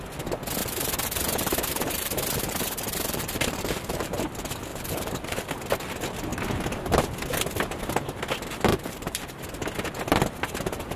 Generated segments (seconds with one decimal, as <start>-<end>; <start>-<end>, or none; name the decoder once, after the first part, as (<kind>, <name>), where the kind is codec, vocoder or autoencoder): 0.6-4.2 (vocoder, BigVGAN v2); 4.7-5.4; 8.7-9.4